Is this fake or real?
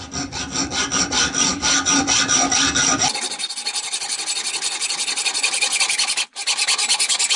real